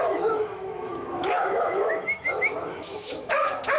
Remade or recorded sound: remade